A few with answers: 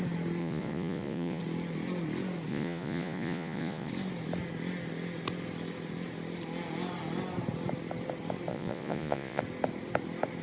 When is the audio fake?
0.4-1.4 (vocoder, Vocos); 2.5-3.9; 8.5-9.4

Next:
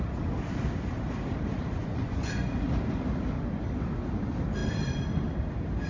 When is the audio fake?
1.8-2.5 (vocoder, Vocos)

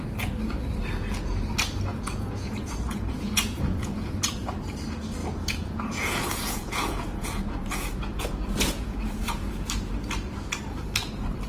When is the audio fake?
1.9-4.1 (vocoder, Vocos); 5.2-9.5

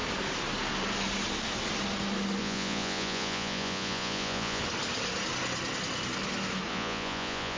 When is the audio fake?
2.4-4.6 (vocoder, Vocos); 6.7-7.6

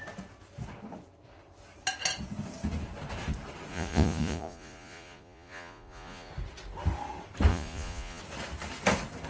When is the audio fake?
3.7-6.3 (vocoder, Vocos); 7.5-8.2